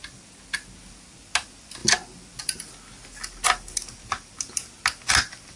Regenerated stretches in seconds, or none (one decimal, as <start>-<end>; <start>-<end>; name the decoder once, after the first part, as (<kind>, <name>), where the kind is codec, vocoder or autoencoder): none